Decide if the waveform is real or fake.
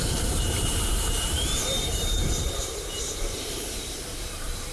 fake